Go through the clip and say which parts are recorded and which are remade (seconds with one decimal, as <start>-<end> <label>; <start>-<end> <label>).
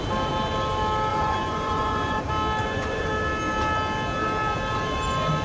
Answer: 0.0-1.1 recorded; 1.1-2.2 remade; 2.2-2.6 recorded; 2.6-3.1 remade; 3.1-5.4 recorded